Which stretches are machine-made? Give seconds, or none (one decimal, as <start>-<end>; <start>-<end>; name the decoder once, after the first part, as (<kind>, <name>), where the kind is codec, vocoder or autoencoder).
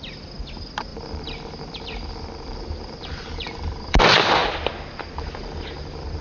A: 0.9-4.0 (vocoder, BigVGAN v2)